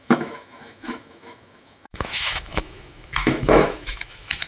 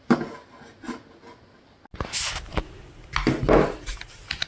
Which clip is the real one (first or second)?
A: second